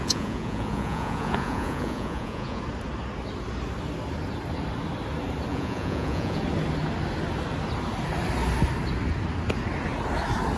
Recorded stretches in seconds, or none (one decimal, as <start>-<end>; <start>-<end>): 2.6-5.5; 6.4-10.6